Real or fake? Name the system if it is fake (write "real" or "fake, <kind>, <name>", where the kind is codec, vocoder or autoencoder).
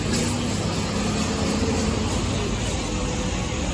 real